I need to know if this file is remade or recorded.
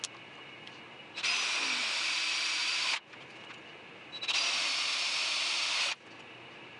recorded